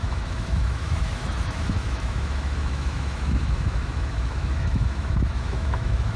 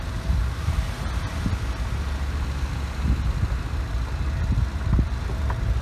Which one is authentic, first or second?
second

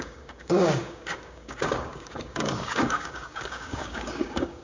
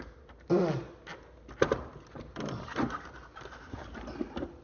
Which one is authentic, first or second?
second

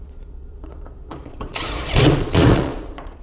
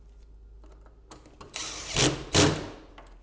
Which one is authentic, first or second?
second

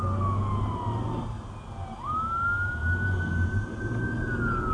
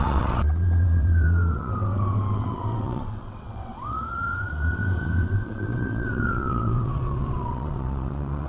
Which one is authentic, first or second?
first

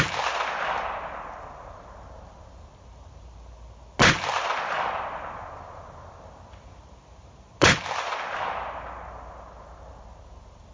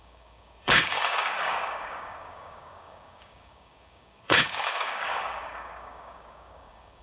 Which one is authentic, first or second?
first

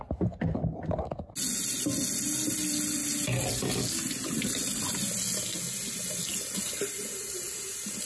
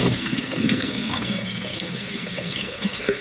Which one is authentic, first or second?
first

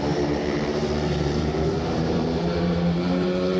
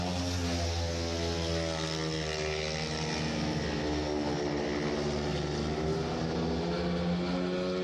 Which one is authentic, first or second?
second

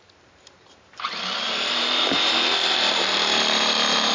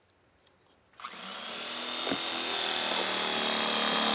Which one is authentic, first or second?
second